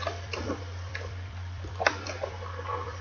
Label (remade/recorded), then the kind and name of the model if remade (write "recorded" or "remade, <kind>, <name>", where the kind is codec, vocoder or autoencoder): remade, vocoder, BigVGAN v2